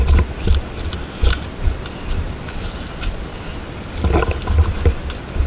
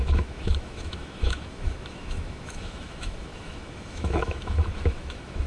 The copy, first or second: second